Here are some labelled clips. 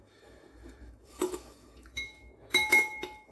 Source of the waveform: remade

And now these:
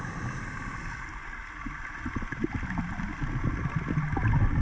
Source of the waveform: recorded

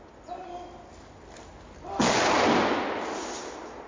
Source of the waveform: recorded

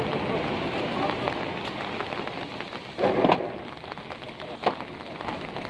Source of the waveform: recorded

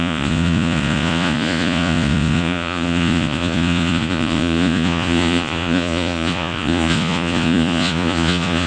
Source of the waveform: remade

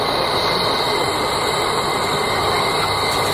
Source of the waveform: recorded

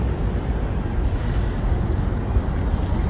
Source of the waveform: recorded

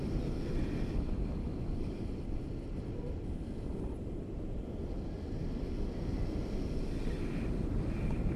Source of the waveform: recorded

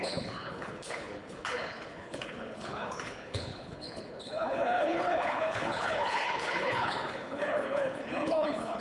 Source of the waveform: remade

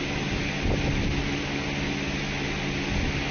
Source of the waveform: recorded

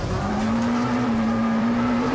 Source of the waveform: remade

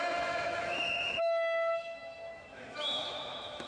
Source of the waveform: remade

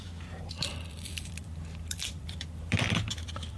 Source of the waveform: remade